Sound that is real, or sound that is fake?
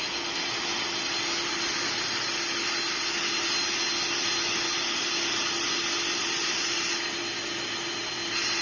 real